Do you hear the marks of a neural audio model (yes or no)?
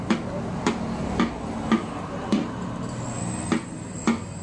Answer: no